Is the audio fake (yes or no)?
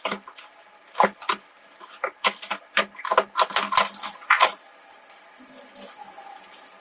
no